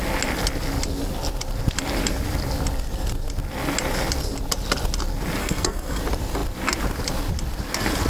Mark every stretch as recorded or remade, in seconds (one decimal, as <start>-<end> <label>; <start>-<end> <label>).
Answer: 0.0-5.4 recorded; 5.4-6.0 remade; 6.0-8.1 recorded